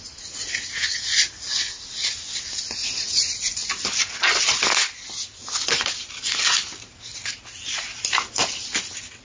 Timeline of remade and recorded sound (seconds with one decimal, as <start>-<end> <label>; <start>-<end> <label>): 0.0-9.2 recorded

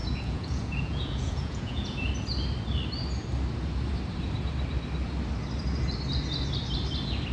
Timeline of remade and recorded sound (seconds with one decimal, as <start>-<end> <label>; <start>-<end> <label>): 0.0-2.1 remade; 2.1-7.3 recorded